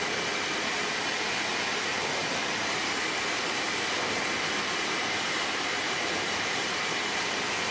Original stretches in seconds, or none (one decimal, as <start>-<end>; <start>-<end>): 0.0-5.0; 7.1-7.7